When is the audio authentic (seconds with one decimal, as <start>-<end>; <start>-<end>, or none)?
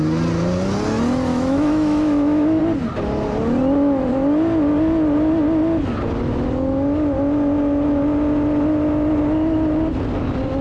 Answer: 0.0-1.3; 2.6-10.6